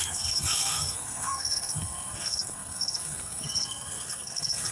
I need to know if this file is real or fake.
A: fake